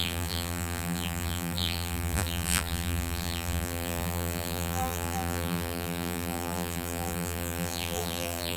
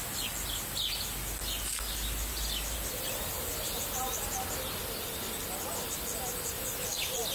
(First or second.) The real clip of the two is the second